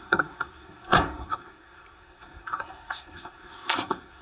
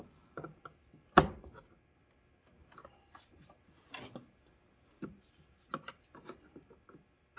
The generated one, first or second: first